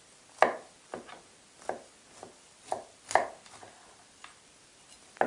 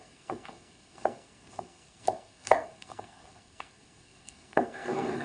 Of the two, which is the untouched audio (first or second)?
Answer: first